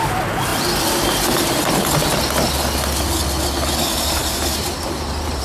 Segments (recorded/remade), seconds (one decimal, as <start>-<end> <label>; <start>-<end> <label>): 0.0-4.2 recorded; 4.2-5.4 remade